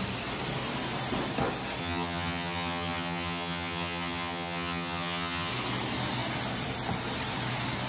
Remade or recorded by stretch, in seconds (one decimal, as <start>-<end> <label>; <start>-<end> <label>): 0.0-1.8 recorded; 1.8-5.5 remade; 5.5-7.9 recorded